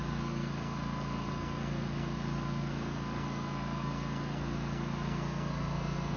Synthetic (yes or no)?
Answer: yes